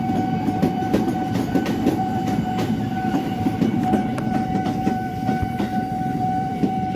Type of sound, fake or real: fake